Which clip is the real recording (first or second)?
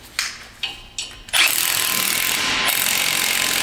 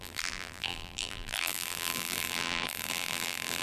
first